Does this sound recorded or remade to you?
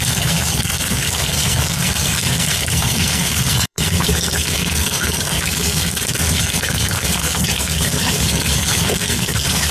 remade